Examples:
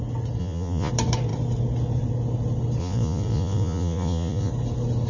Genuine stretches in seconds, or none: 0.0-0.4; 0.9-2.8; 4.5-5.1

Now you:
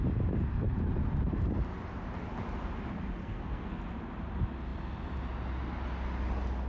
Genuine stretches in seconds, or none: 0.0-3.2; 3.8-6.7

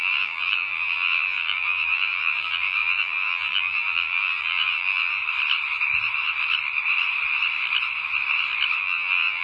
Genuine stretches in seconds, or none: 5.2-8.8

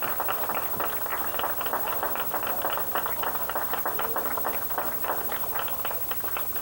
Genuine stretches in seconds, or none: 0.0-6.6

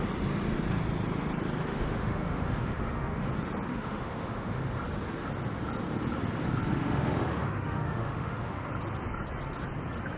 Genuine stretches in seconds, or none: 0.0-1.7; 3.3-3.7; 4.8-6.7; 8.7-10.2

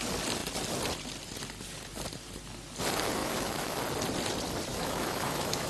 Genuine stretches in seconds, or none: 0.0-3.2; 3.8-4.7

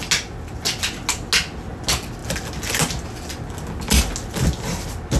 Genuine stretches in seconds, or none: 0.0-5.2